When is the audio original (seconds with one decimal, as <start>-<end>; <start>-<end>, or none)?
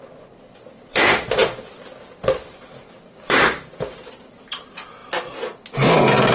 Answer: 5.0-6.3